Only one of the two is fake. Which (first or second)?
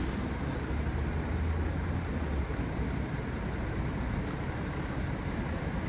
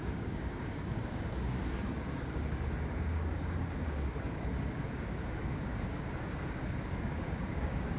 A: second